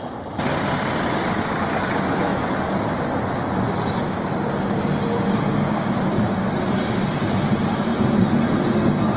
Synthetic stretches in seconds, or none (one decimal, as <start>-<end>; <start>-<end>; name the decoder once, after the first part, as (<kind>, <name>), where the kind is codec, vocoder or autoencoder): 7.9-8.5 (vocoder, BigVGAN v2)